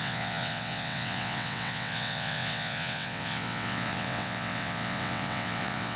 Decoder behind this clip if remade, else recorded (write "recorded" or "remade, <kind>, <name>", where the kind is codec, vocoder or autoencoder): remade, vocoder, WaveNeXt